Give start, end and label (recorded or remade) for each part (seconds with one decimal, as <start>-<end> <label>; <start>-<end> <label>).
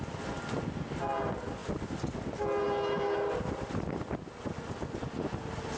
0.0-5.8 recorded